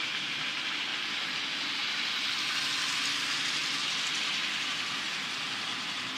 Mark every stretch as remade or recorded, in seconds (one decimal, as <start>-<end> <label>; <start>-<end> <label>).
0.0-6.2 recorded